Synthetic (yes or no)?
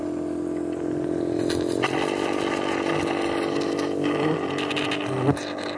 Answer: no